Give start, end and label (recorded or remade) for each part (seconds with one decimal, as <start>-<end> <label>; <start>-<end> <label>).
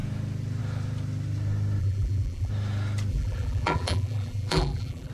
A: 0.0-1.8 recorded; 1.8-2.5 remade; 2.5-3.1 recorded; 3.1-5.1 remade